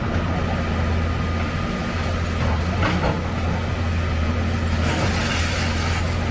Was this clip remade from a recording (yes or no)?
no